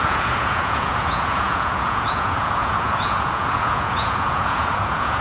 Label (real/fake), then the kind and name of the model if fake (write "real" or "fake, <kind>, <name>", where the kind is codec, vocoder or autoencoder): fake, vocoder, Vocos